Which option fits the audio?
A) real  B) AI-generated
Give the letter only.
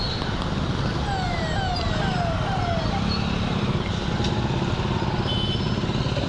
A